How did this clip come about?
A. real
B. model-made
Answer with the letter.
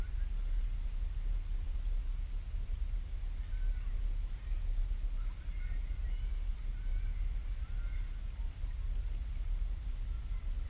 A